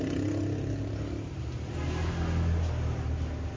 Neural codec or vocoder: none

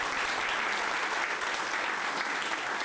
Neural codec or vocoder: none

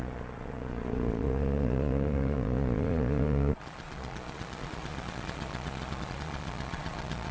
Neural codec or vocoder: vocoder, Vocos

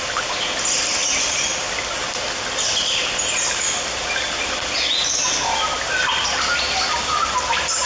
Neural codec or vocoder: none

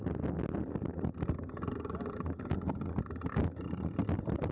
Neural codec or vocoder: none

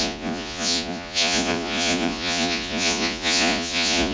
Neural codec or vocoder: vocoder, Vocos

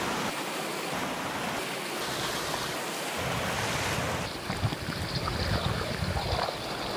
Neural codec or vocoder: none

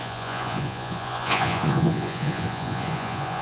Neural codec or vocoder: vocoder, Vocos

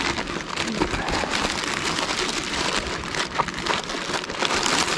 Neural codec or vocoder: none